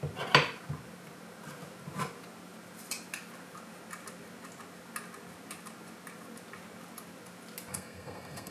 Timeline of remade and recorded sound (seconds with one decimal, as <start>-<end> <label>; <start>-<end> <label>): 0.0-7.7 recorded; 7.7-8.5 remade